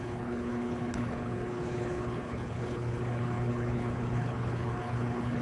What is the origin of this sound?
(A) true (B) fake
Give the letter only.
B